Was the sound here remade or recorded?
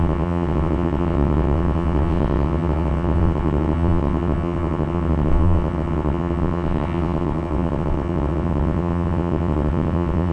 remade